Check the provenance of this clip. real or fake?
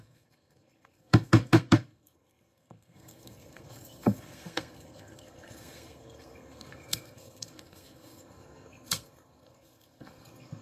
fake